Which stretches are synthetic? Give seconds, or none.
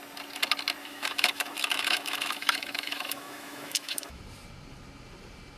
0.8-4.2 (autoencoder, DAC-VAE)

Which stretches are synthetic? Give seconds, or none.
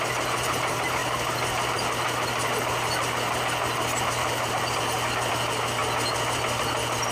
none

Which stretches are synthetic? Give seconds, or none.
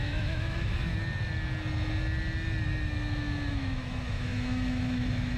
0.0-0.9 (autoencoder, DAC-VAE); 3.5-5.4